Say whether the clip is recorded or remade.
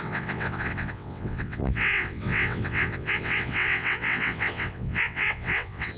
remade